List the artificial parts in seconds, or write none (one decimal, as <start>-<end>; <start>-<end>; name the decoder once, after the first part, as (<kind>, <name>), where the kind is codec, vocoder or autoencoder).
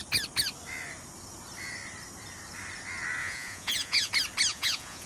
3.2-4.1 (vocoder, Vocos); 4.5-5.1